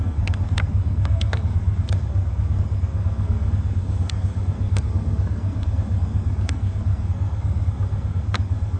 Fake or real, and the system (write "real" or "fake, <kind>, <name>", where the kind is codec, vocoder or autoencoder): fake, codec, SNAC